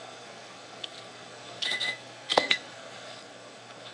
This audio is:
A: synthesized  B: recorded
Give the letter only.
A